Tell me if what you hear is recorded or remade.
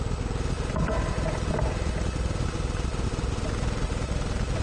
recorded